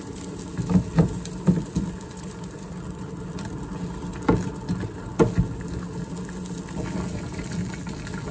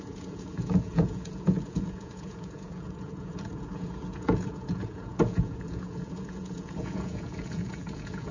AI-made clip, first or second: second